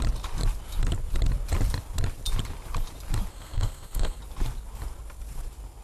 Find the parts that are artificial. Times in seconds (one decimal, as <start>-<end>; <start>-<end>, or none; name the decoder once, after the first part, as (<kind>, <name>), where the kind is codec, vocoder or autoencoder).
3.3-4.2 (codec, SNAC)